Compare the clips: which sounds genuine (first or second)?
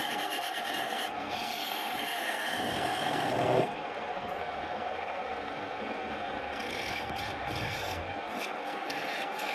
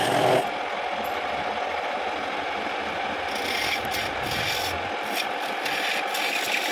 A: second